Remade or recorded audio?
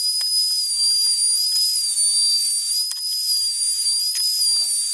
recorded